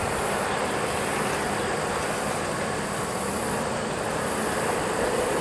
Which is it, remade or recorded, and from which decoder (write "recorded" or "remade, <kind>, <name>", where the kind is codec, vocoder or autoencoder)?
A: recorded